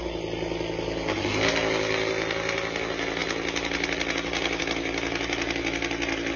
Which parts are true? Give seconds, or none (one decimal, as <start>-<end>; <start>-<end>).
0.0-6.4